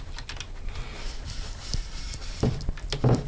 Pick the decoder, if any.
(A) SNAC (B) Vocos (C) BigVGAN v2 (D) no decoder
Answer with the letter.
D